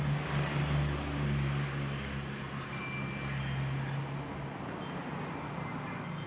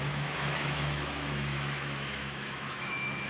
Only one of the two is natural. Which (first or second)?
first